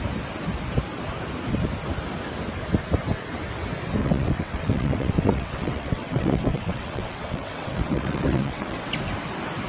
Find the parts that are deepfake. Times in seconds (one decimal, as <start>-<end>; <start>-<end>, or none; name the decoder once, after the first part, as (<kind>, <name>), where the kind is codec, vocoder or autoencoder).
4.0-8.9 (vocoder, WaveNeXt)